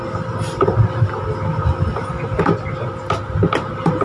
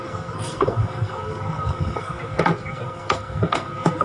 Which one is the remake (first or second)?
second